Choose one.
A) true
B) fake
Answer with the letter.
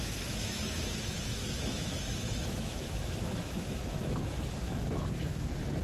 B